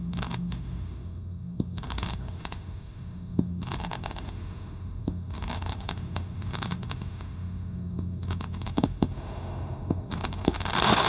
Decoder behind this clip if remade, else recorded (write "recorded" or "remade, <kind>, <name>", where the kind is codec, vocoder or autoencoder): remade, autoencoder, DAC-VAE